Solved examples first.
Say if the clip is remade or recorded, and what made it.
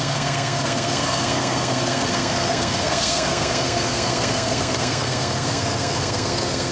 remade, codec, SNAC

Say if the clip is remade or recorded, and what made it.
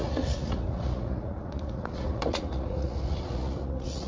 remade, vocoder, Vocos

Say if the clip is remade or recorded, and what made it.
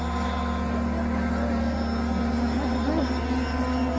recorded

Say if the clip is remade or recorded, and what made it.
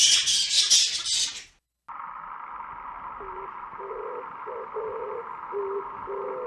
recorded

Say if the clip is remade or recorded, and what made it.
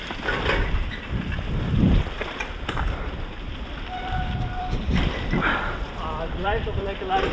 remade, vocoder, BigVGAN v2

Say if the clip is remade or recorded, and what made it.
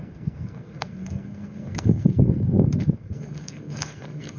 remade, codec, SNAC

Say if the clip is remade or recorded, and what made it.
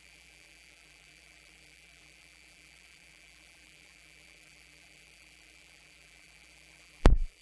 remade, vocoder, BigVGAN v2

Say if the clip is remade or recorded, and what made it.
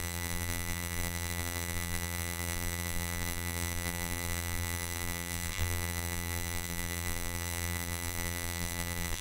remade, vocoder, BigVGAN v2